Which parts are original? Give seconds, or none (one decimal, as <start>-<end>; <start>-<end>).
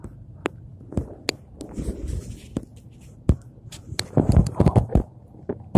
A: 0.7-3.6